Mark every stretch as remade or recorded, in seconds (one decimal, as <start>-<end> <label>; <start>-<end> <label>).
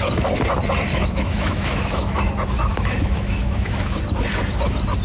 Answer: 0.0-0.9 recorded; 0.9-2.3 remade; 2.3-2.7 recorded; 2.7-3.9 remade; 3.9-5.0 recorded